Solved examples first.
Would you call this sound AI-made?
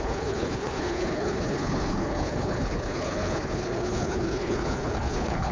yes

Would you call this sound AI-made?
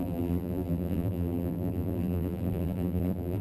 yes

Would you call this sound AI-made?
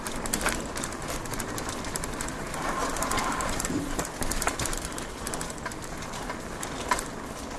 no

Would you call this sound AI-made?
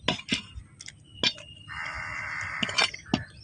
no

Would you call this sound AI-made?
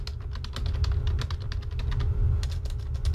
no